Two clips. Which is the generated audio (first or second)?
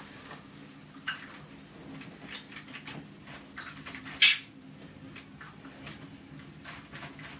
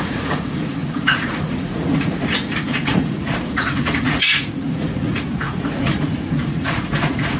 second